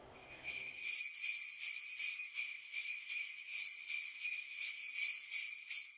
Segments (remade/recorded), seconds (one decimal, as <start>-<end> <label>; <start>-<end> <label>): 0.0-0.9 remade; 0.9-2.1 recorded; 2.1-3.5 remade; 3.5-4.1 recorded; 4.1-4.8 remade; 4.8-6.0 recorded